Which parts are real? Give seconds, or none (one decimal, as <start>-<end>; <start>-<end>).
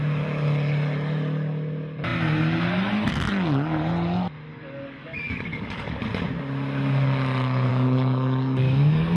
0.0-4.5; 6.0-7.7